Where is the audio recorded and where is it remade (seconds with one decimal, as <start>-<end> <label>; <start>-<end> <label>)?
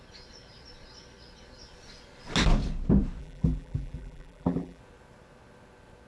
0.0-3.2 recorded; 3.2-4.8 remade; 4.8-6.1 recorded